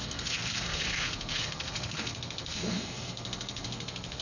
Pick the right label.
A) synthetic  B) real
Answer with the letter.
A